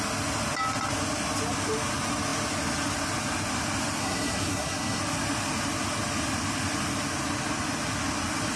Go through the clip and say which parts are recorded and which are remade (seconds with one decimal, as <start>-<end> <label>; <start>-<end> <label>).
0.0-4.0 recorded; 4.0-5.0 remade; 5.0-8.6 recorded